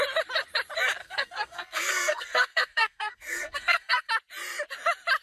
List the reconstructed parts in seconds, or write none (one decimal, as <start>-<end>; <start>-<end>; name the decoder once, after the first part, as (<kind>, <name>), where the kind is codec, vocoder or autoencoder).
1.0-4.1 (codec, SNAC)